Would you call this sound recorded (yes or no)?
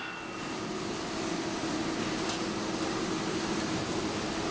yes